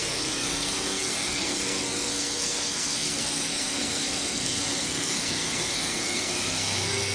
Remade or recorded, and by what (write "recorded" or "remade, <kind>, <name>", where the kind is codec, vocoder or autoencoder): remade, codec, SNAC